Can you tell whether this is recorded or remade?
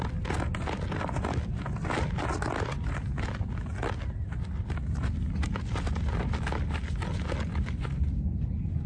recorded